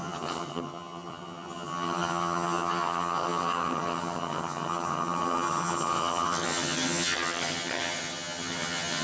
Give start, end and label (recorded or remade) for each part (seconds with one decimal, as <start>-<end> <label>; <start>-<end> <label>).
0.0-9.0 remade

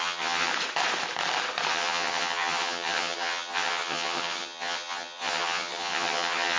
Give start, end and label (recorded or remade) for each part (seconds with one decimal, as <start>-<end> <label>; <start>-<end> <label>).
0.0-0.5 remade; 0.5-1.7 recorded; 1.7-6.6 remade

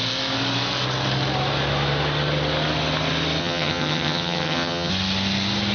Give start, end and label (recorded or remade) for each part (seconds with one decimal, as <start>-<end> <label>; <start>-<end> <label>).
0.0-3.4 recorded; 3.4-4.9 remade; 4.9-5.7 recorded

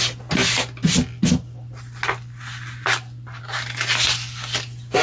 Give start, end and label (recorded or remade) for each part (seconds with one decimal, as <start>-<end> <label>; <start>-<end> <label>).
0.0-5.0 recorded

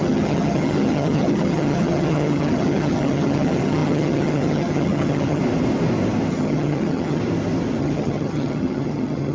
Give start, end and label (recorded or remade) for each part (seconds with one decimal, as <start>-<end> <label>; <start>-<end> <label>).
0.0-5.4 remade; 5.4-6.3 recorded; 6.3-7.2 remade; 7.2-7.8 recorded; 7.8-9.3 remade

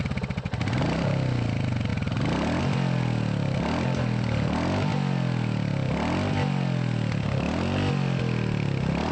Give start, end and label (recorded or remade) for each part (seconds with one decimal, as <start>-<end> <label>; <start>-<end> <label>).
0.0-9.1 recorded